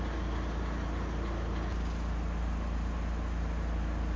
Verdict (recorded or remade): recorded